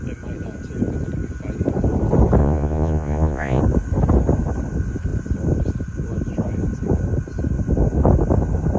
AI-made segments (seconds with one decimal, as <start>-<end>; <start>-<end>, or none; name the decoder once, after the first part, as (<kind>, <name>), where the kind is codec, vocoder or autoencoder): 2.4-3.6 (vocoder, Vocos)